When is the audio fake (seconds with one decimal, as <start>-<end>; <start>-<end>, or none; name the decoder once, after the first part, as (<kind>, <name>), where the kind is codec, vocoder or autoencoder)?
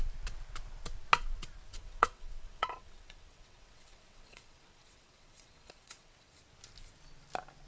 1.7-6.3 (vocoder, WaveNeXt)